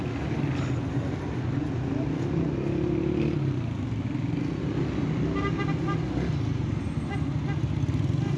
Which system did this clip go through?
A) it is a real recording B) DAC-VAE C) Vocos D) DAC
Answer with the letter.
A